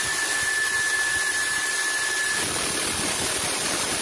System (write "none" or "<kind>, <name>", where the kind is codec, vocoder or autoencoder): none